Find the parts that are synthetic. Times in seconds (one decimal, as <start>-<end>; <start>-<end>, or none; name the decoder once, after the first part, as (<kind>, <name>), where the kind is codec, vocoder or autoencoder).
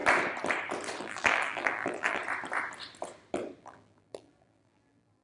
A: 1.0-2.2 (vocoder, BigVGAN v2); 3.6-5.2